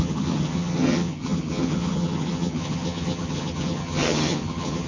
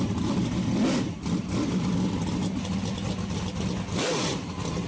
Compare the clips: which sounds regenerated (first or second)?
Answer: first